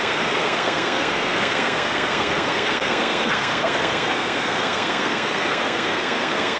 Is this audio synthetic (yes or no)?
yes